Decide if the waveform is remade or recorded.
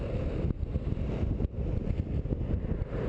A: recorded